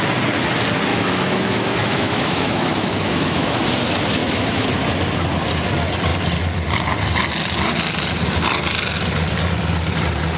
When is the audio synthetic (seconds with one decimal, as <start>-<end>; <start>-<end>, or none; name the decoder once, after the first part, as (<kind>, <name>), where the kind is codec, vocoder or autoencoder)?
0.9-3.6 (autoencoder, DAC-VAE); 4.2-4.7